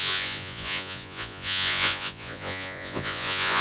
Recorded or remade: remade